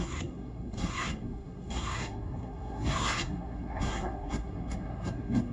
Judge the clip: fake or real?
fake